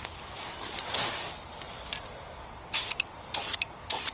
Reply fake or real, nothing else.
real